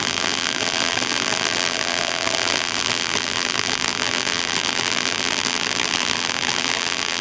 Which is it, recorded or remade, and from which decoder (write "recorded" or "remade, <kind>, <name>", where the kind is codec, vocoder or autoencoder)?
remade, vocoder, BigVGAN v2